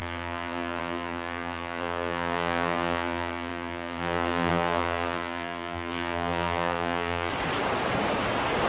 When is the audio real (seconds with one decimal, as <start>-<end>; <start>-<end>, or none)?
7.3-8.7

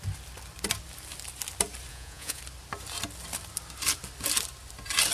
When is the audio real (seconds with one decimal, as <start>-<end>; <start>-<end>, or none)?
0.0-1.9; 2.4-5.1

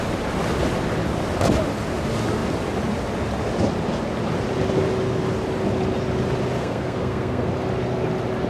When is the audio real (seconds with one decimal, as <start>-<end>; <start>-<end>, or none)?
0.0-6.6; 7.5-8.5

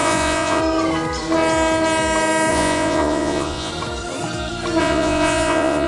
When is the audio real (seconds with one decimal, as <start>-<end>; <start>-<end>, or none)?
0.6-2.5; 3.7-4.8

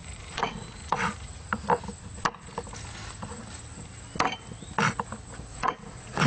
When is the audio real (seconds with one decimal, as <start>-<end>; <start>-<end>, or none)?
1.5-5.5

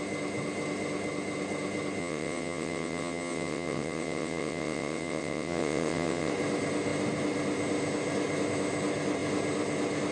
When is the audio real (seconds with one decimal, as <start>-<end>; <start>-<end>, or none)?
0.0-2.0; 6.3-10.1

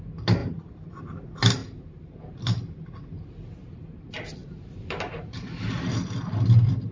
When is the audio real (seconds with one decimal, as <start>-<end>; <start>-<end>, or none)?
0.0-0.4; 1.0-1.6; 2.2-4.4; 5.8-6.9